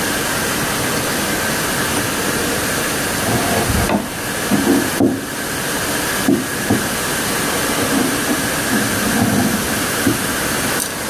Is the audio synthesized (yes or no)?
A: no